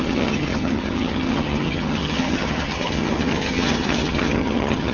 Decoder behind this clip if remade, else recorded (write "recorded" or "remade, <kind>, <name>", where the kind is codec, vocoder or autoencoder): remade, vocoder, HiFi-GAN